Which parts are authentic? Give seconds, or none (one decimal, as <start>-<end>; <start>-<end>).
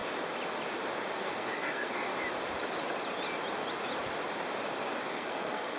0.0-1.2; 2.1-5.1